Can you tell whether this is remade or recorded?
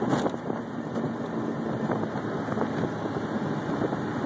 recorded